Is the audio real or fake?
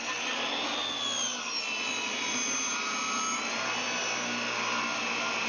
real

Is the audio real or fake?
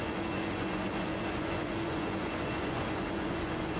fake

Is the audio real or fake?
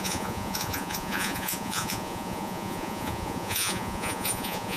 fake